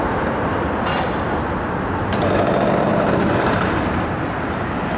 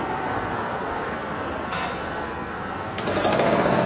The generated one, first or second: second